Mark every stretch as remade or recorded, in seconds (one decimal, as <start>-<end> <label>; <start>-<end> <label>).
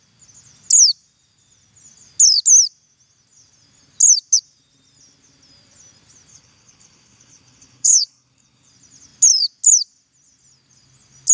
0.0-6.3 recorded; 6.3-8.7 remade; 8.7-11.3 recorded